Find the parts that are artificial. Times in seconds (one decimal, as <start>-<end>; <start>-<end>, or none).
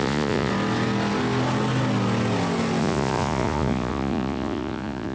0.0-0.5; 2.8-5.1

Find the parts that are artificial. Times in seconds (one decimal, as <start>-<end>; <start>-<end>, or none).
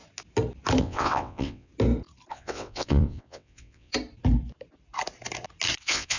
0.8-1.7; 2.3-3.9; 5.8-6.2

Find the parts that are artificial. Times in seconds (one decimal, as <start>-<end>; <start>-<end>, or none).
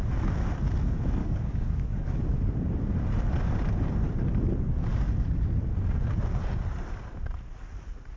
1.2-2.2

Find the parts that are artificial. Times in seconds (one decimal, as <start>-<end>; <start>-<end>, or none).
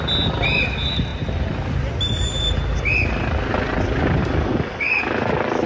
4.2-5.0